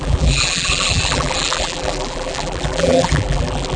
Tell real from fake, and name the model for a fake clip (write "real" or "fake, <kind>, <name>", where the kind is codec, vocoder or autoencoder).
fake, vocoder, BigVGAN v2